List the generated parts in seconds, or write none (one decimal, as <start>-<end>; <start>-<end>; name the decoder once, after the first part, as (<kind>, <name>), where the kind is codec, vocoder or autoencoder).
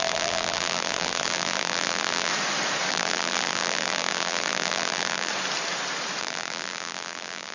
0.0-2.3 (vocoder, BigVGAN v2); 2.9-5.3; 6.2-7.5